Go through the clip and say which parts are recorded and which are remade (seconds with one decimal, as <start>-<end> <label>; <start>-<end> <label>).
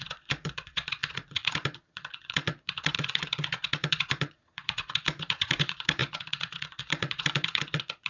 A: 0.0-8.1 remade